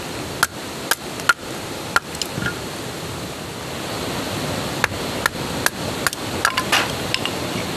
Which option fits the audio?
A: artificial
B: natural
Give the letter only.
B